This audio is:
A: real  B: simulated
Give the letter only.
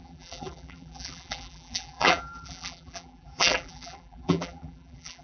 B